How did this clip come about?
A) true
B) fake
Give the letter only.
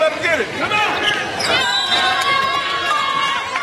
A